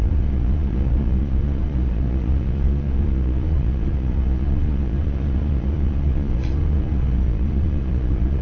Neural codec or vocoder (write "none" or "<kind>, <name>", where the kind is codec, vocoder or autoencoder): vocoder, Vocos